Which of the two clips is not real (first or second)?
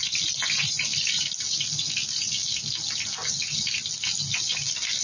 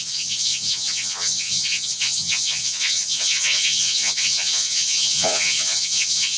second